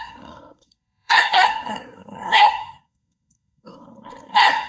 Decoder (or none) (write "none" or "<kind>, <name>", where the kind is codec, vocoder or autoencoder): codec, SNAC